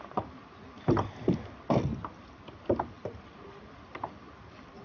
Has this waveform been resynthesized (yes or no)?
no